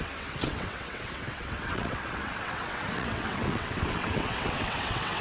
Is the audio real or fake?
fake